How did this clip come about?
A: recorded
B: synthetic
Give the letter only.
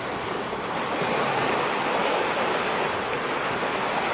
A